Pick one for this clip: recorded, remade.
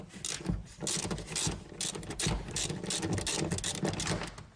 recorded